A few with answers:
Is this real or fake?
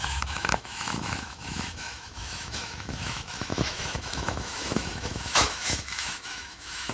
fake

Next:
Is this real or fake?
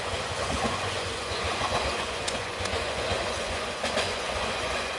fake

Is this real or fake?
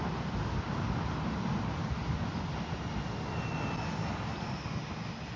real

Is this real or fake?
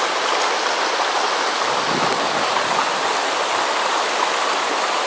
real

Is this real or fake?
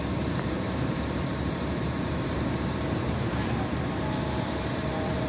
fake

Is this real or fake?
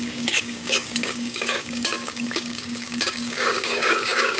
fake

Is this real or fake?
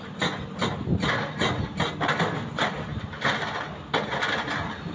real